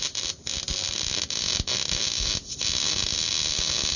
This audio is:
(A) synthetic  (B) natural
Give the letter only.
B